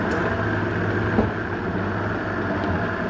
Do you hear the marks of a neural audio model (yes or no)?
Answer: no